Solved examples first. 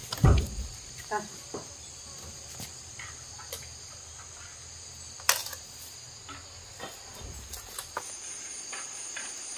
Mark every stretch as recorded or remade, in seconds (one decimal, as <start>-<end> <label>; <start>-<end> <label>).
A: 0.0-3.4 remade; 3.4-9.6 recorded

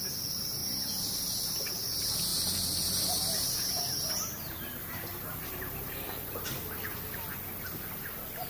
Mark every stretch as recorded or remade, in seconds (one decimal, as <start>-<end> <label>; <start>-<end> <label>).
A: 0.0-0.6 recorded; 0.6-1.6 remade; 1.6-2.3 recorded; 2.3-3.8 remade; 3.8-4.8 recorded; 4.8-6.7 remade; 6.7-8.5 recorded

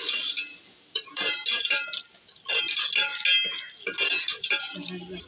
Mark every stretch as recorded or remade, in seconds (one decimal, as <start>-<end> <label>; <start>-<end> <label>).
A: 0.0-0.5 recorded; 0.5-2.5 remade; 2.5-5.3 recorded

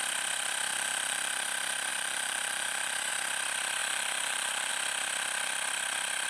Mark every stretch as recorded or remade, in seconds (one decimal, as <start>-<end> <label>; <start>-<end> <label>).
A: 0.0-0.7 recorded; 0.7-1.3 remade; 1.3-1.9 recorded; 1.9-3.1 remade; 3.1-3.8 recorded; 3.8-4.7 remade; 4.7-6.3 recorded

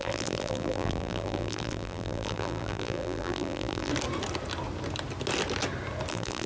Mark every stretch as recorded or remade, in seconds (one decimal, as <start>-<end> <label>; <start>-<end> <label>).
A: 0.0-3.9 remade; 3.9-6.1 recorded; 6.1-6.5 remade

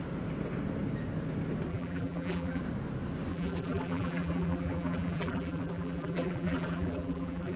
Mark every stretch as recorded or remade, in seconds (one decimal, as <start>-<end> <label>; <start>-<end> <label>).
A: 0.0-1.7 recorded; 1.7-2.6 remade; 2.6-3.3 recorded; 3.3-7.6 remade